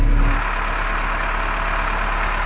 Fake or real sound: real